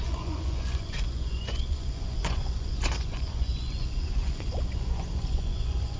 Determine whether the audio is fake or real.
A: fake